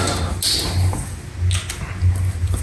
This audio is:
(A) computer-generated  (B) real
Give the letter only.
B